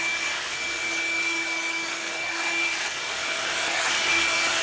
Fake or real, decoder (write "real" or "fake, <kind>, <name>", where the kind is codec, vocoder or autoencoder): fake, codec, DAC